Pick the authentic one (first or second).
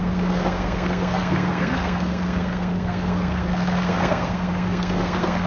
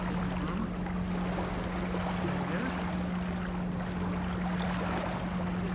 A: second